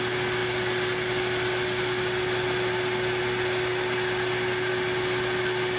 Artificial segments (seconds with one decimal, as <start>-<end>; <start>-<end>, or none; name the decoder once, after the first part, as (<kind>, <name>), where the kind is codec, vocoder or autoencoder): none